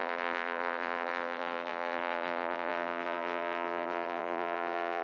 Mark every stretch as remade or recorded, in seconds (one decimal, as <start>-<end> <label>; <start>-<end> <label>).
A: 0.0-5.0 remade